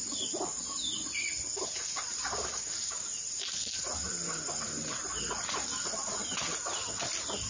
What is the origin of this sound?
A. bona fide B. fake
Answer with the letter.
A